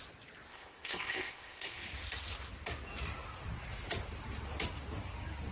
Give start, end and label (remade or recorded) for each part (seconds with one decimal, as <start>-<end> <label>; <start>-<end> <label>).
0.0-0.5 recorded; 0.5-1.8 remade; 1.8-5.5 recorded